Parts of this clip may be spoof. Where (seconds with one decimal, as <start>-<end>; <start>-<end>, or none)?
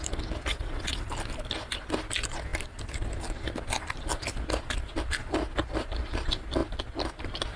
0.5-1.1